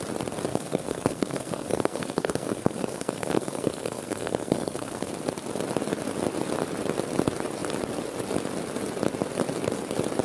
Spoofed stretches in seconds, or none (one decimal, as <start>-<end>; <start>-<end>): 0.5-5.1